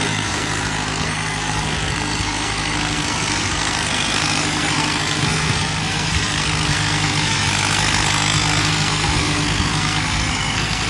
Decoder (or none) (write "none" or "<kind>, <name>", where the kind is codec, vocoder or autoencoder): codec, SNAC